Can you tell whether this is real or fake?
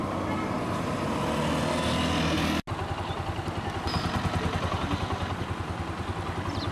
real